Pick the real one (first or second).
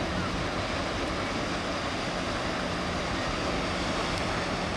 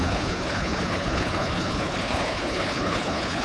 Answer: first